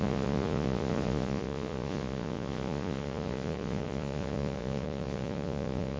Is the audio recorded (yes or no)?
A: no